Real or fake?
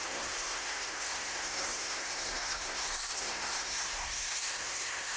fake